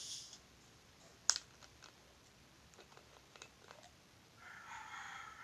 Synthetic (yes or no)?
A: no